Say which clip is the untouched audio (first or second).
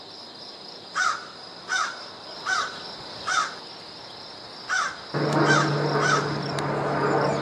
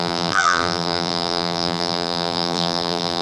first